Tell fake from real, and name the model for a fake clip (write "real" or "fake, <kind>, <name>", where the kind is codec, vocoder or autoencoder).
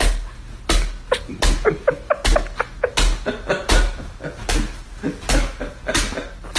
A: real